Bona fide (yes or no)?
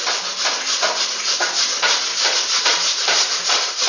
yes